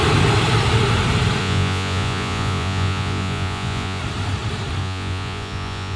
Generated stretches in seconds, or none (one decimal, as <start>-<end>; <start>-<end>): 1.4-4.0; 4.8-6.0